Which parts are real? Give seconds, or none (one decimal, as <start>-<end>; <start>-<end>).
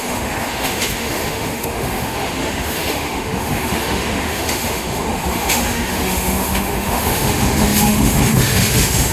none